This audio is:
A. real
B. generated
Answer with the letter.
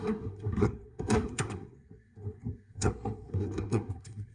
B